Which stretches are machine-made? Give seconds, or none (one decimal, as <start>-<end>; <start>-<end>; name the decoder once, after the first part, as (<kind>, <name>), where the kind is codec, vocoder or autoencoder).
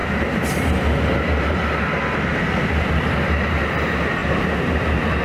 none